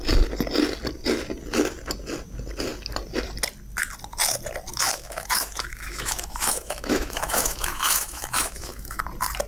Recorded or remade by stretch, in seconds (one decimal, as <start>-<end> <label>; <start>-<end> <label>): 0.0-4.7 recorded; 4.7-9.0 remade; 9.0-9.5 recorded